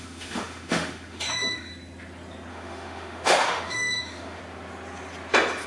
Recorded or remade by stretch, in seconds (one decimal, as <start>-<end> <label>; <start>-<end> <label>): 0.0-1.7 remade; 1.7-2.5 recorded; 2.5-4.4 remade; 4.4-5.7 recorded